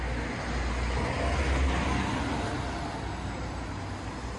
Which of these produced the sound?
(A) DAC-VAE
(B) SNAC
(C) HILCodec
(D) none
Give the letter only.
D